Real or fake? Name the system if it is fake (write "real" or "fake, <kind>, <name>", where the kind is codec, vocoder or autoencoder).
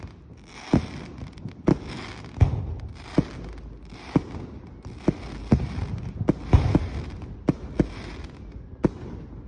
real